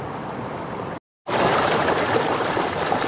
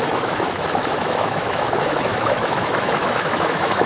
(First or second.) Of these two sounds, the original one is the first